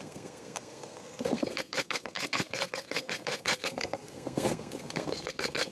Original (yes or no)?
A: no